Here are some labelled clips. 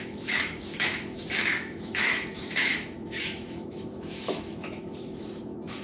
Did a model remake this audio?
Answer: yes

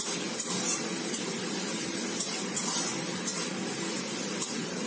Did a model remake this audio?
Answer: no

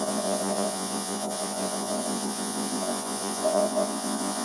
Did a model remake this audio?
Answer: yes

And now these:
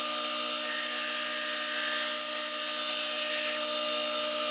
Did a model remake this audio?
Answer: no